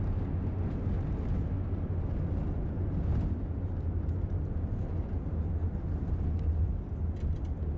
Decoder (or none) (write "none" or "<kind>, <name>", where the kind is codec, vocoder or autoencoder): none